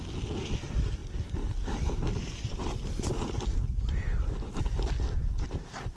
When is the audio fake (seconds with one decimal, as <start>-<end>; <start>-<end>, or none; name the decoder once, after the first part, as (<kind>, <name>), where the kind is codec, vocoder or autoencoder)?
none